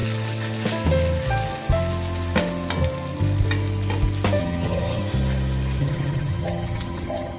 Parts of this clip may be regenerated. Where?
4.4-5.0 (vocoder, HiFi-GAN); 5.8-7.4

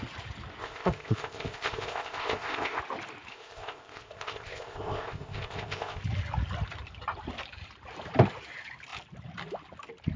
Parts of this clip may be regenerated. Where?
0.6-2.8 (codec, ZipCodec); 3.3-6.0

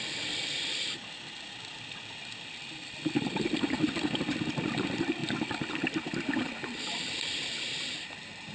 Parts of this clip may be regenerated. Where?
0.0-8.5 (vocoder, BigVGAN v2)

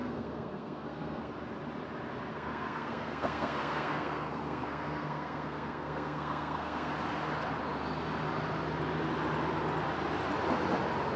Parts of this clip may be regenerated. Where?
0.0-1.3 (codec, SNAC); 2.3-6.9

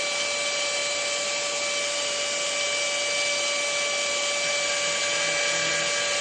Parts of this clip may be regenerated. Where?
none

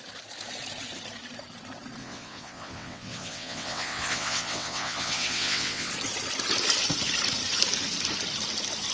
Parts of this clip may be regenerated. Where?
2.0-5.9 (vocoder, WaveNeXt)

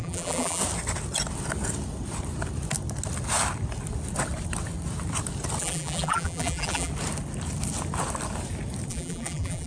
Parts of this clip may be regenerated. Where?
0.0-0.6 (vocoder, BigVGAN v2); 5.6-6.9; 8.9-9.7

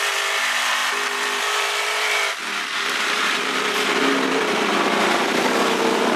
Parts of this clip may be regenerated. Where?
0.0-6.2 (vocoder, BigVGAN v2)